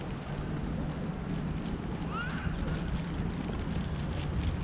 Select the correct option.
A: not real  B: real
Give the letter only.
B